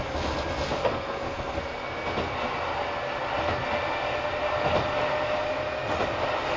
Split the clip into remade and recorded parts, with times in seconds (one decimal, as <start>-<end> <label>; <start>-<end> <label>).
0.0-0.8 recorded; 0.8-1.6 remade; 1.6-6.6 recorded